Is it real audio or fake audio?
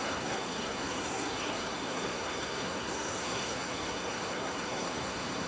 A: fake